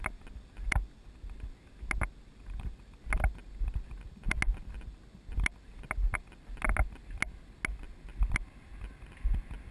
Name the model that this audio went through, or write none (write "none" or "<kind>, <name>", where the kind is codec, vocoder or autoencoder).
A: none